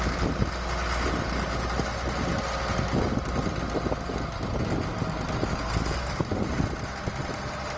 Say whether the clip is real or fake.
real